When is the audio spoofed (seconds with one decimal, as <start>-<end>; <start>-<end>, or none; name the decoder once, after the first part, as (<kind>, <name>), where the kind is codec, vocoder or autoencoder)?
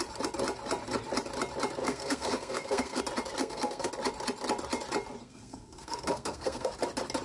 1.8-3.0 (codec, SNAC); 3.4-3.9; 5.2-6.7